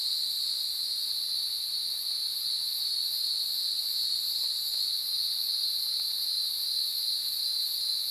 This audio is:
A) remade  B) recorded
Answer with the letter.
B